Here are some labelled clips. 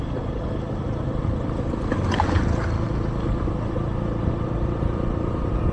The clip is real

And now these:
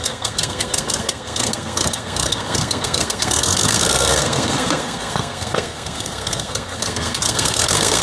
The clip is fake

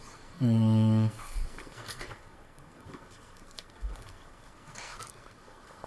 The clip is fake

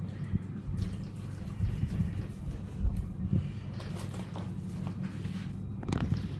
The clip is real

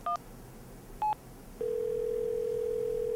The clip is real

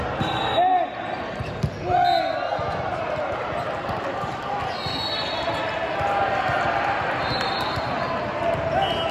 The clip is real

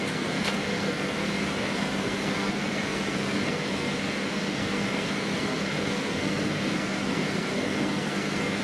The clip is fake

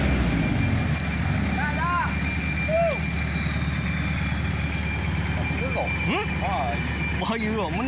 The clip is real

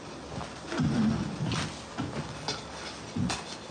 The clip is real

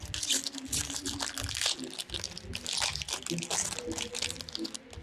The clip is real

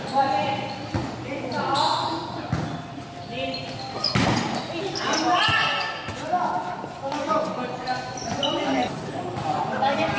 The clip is real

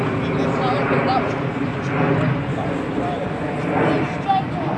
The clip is real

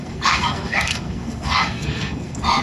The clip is fake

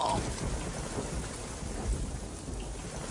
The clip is real